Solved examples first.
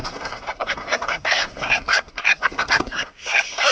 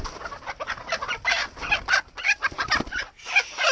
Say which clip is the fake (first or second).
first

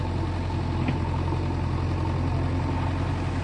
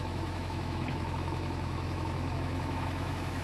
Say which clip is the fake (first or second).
second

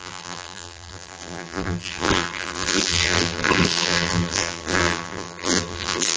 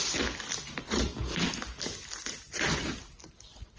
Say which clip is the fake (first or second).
first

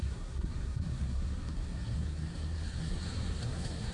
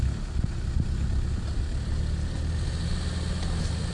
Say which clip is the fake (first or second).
first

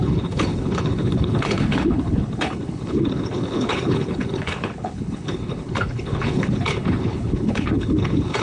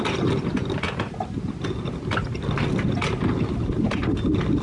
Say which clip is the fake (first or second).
first